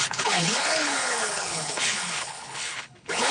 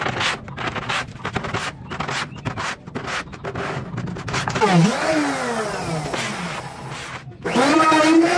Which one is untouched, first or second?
second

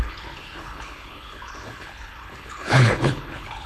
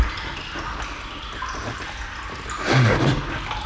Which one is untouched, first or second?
second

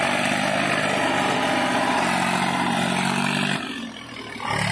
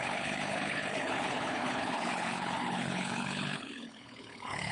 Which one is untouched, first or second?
first